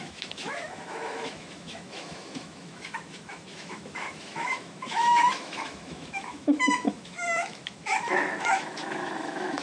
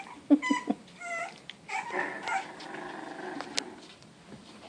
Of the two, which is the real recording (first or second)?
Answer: second